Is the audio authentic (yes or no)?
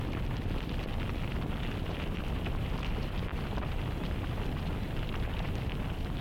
yes